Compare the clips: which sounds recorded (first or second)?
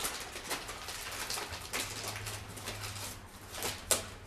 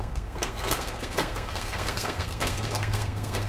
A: first